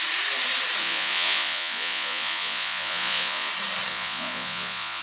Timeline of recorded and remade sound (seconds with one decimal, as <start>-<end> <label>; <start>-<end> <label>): 0.0-0.8 recorded; 0.8-3.5 remade; 3.5-3.9 recorded; 3.9-5.0 remade